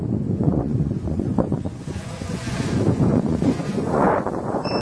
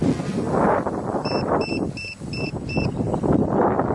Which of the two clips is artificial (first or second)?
first